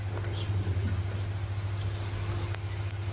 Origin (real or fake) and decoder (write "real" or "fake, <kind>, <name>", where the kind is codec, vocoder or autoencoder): real